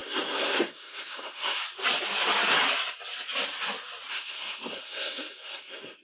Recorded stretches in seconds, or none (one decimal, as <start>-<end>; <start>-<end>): 1.6-4.1